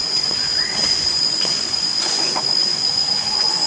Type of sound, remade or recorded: remade